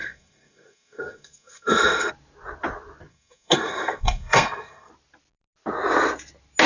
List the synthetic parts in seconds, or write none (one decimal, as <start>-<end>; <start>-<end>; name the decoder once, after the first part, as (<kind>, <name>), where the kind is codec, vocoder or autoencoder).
0.0-2.1 (codec, SNAC); 3.1-4.9